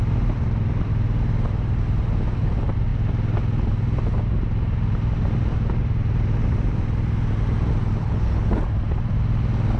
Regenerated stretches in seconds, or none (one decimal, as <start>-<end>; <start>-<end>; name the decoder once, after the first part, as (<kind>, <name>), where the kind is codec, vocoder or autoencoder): 8.0-8.6 (codec, HILCodec)